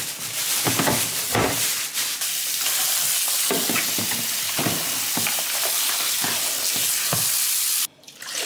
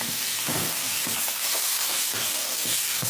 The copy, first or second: second